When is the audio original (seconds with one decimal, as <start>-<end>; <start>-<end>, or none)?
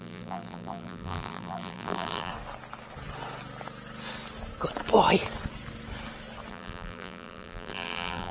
2.3-6.5